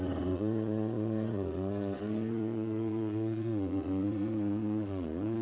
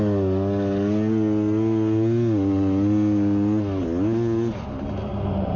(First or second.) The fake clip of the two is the first